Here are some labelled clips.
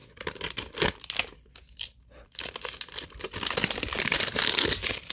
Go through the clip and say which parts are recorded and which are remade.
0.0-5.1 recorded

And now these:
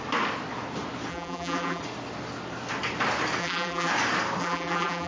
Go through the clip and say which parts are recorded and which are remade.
0.0-1.1 recorded; 1.1-1.8 remade; 1.8-3.4 recorded; 3.4-3.9 remade; 3.9-4.4 recorded; 4.4-5.1 remade